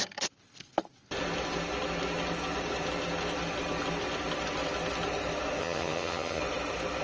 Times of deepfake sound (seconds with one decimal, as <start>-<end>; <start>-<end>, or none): 5.6-6.4